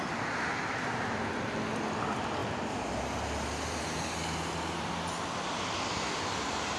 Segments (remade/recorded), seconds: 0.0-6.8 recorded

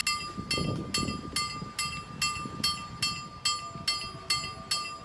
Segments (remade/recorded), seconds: 0.0-5.0 recorded

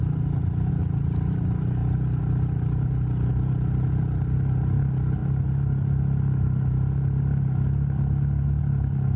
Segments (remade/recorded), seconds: 0.0-9.2 recorded

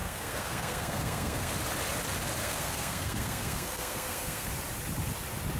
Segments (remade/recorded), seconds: 0.0-1.5 remade; 1.5-2.4 recorded; 2.4-4.5 remade; 4.5-5.6 recorded

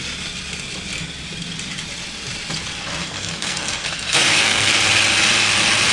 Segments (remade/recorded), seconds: 0.0-3.0 recorded; 3.0-4.8 remade; 4.8-5.9 recorded

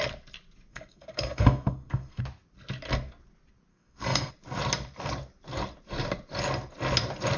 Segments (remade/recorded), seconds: 0.0-0.7 recorded; 0.7-2.2 remade; 2.2-3.7 recorded; 3.7-4.3 remade; 4.3-7.4 recorded

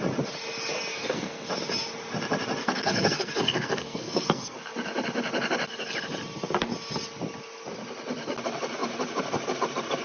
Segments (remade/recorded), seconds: 0.0-0.9 recorded; 0.9-1.5 remade; 1.5-2.6 recorded; 2.6-4.6 remade; 4.6-10.0 recorded